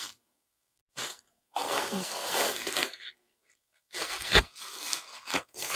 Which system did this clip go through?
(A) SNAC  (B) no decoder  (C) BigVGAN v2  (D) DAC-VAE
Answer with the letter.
A